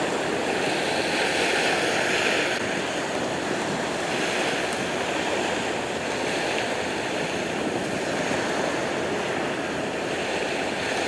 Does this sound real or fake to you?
real